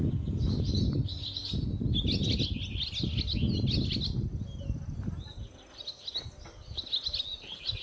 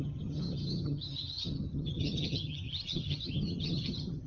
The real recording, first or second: first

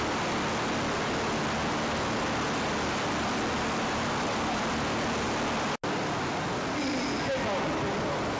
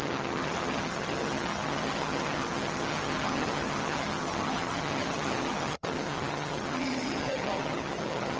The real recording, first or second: first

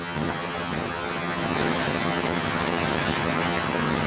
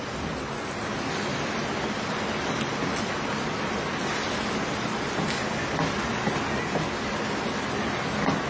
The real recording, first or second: second